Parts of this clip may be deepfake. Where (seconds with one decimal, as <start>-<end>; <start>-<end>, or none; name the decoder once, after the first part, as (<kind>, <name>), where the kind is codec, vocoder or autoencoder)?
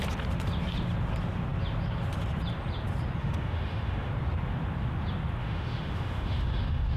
3.2-4.1 (autoencoder, DAC-VAE); 5.4-7.0